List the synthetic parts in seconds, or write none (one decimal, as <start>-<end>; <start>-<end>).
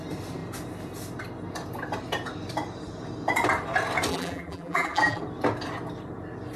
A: 4.1-5.2